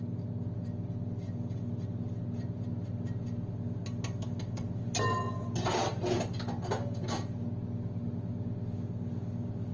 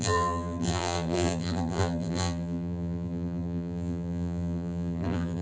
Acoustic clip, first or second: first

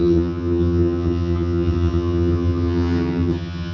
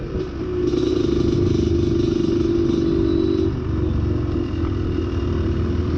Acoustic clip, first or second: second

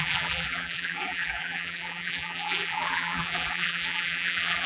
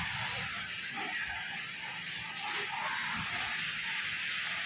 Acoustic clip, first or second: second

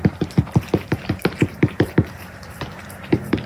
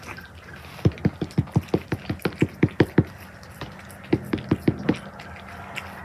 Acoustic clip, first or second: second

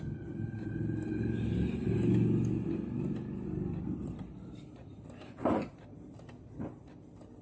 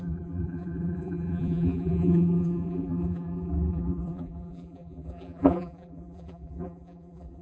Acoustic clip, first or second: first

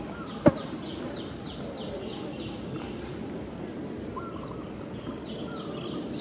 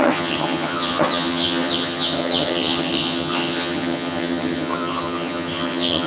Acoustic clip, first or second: first